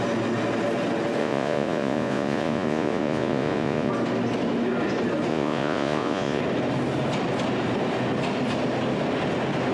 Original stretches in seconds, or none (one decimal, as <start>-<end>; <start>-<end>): 0.0-1.2; 3.9-5.3; 6.4-9.7